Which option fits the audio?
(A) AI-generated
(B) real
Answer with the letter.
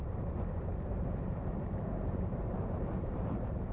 A